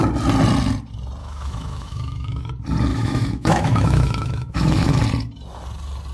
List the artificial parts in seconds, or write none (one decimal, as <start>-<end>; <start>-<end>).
1.2-2.5; 2.9-5.0